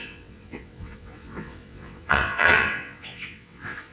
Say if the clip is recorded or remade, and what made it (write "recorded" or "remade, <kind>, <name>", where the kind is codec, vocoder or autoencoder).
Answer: remade, vocoder, WaveNeXt